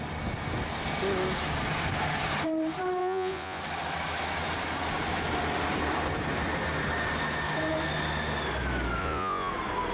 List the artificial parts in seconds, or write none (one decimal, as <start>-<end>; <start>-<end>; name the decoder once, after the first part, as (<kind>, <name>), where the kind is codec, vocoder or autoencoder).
3.0-3.6 (vocoder, Vocos); 9.0-9.5